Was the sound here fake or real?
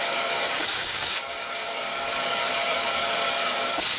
fake